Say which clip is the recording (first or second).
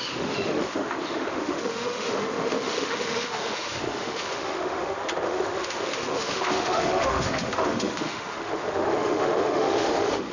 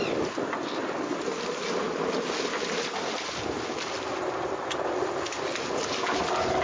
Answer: second